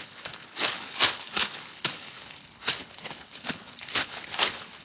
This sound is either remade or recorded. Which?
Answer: remade